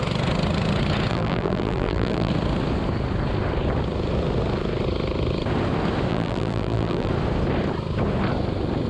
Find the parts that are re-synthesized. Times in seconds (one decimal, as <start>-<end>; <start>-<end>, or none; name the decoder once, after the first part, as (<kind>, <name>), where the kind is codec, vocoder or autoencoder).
1.1-2.3 (vocoder, BigVGAN v2); 6.1-7.1